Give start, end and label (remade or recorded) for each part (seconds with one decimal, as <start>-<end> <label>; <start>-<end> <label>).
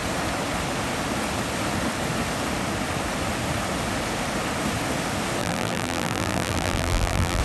0.0-5.4 recorded; 5.4-7.4 remade